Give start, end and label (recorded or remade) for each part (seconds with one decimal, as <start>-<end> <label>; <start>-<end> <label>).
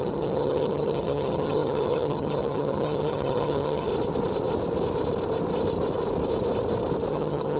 0.0-3.9 remade; 3.9-7.1 recorded; 7.1-7.6 remade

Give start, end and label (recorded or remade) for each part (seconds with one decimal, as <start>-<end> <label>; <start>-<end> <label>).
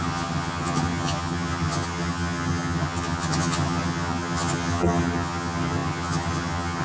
0.0-6.8 remade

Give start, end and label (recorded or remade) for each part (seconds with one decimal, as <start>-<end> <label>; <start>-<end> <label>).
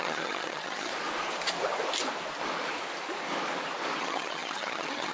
0.0-0.9 remade; 0.9-4.0 recorded; 4.0-5.1 remade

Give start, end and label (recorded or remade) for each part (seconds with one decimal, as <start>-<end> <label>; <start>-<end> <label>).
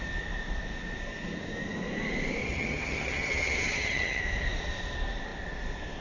0.0-2.4 recorded; 2.4-4.2 remade; 4.2-6.0 recorded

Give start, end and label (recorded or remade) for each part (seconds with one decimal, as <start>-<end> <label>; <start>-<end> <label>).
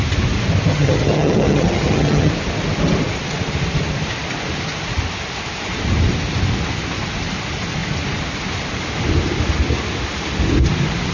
0.0-0.7 recorded; 0.7-2.3 remade; 2.3-11.1 recorded